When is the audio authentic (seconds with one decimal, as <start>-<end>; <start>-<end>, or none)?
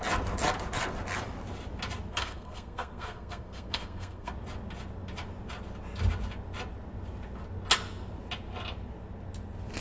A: 0.0-2.1; 4.3-9.8